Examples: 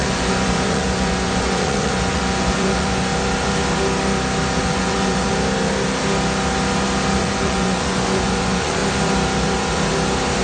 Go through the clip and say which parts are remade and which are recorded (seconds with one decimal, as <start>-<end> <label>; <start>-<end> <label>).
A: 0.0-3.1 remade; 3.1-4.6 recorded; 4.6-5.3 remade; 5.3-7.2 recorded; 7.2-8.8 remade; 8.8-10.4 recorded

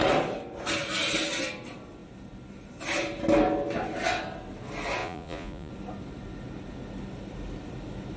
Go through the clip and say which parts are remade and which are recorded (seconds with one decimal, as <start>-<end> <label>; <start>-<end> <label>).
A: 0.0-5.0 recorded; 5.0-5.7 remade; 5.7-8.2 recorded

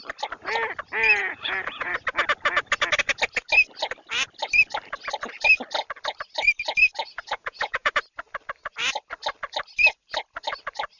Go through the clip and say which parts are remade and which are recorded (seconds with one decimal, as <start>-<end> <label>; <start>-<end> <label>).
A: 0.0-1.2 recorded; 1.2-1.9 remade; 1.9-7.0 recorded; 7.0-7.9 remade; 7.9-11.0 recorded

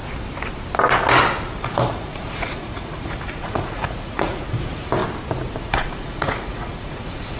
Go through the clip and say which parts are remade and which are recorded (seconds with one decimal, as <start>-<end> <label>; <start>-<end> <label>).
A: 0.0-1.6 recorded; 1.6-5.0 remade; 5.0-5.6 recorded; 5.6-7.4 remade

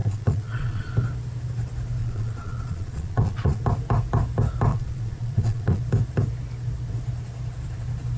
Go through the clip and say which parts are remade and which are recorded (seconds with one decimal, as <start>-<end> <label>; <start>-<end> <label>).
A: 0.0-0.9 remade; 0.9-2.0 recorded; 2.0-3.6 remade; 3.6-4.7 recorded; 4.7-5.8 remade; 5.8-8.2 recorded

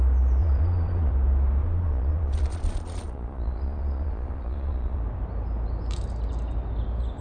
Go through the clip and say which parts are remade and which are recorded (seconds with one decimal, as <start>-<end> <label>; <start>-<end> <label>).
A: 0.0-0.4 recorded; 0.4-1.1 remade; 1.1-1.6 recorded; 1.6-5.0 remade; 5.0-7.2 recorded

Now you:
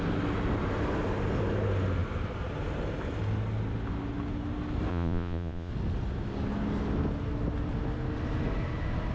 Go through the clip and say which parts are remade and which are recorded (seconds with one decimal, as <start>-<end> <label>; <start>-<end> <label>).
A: 0.0-4.9 recorded; 4.9-5.7 remade; 5.7-9.1 recorded